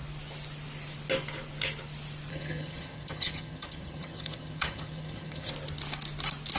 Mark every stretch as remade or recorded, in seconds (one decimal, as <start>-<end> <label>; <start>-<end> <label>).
0.0-2.3 recorded; 2.3-5.5 remade; 5.5-6.6 recorded